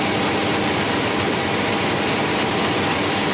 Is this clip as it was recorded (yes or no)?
yes